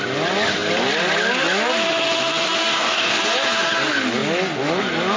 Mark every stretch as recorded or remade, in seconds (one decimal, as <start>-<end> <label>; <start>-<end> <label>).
0.0-2.6 recorded; 2.6-3.2 remade; 3.2-5.2 recorded